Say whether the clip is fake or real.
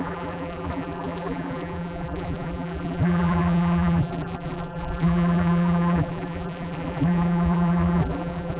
fake